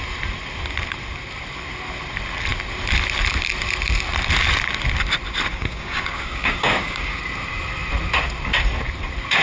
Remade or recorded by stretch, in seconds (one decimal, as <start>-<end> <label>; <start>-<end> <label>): 0.0-5.5 recorded; 5.5-7.2 remade; 7.2-9.4 recorded